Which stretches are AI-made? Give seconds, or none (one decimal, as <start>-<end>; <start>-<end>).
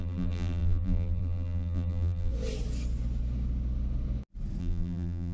0.0-2.3; 4.6-5.3